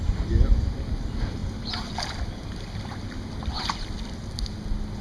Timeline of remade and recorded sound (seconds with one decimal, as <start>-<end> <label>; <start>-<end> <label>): 0.0-5.0 recorded

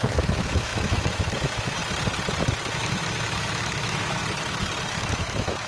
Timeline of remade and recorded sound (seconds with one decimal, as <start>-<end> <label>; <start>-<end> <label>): 0.0-1.8 remade; 1.8-2.7 recorded; 2.7-4.2 remade; 4.2-4.9 recorded; 4.9-5.7 remade

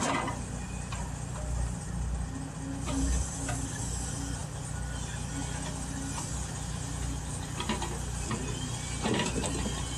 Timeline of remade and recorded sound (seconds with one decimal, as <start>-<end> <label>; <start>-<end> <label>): 0.0-10.0 recorded

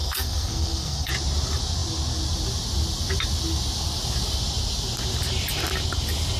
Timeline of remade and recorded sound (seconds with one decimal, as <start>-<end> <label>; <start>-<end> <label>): 0.0-1.1 remade; 1.1-6.4 recorded

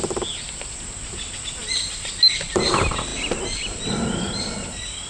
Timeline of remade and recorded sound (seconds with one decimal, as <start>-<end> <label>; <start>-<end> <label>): 0.0-1.6 recorded; 1.6-2.1 remade; 2.1-5.1 recorded